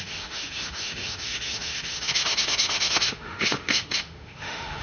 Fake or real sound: fake